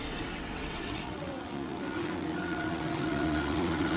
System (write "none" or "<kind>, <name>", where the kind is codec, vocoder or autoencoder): vocoder, WaveNeXt